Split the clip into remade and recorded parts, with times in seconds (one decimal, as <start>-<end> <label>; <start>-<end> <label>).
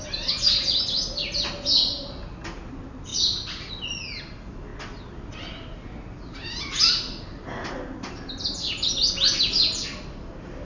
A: 0.0-3.1 recorded; 3.1-3.7 remade; 3.7-10.6 recorded